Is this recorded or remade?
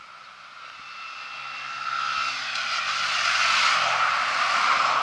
recorded